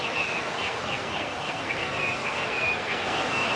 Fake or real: fake